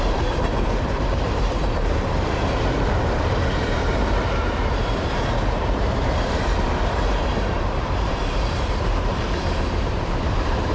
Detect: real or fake fake